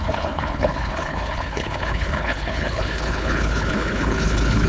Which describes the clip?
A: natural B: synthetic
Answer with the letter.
B